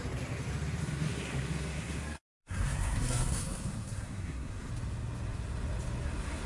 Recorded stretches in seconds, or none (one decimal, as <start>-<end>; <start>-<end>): 0.0-0.8; 4.7-6.5